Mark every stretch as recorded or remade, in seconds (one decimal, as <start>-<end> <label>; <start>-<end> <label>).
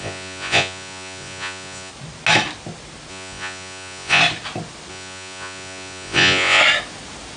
0.0-1.9 remade; 1.9-3.1 recorded; 3.1-4.2 remade; 4.2-4.9 recorded; 4.9-6.6 remade; 6.6-7.4 recorded